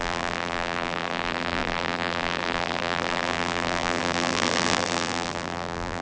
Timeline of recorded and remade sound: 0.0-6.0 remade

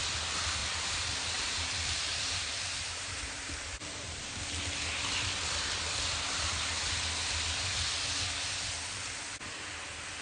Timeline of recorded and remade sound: 0.0-0.6 recorded; 0.6-4.2 remade; 4.2-10.2 recorded

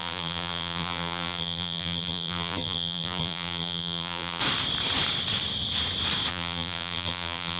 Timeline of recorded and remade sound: 0.0-4.4 remade; 4.4-6.3 recorded; 6.3-7.6 remade